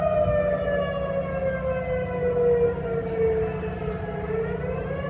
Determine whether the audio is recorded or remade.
recorded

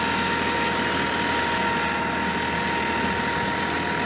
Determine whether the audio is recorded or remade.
recorded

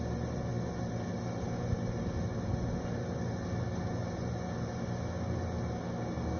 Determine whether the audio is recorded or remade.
recorded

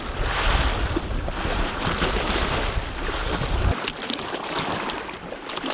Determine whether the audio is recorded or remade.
recorded